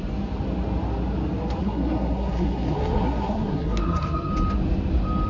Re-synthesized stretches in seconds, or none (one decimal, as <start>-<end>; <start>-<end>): 1.6-4.3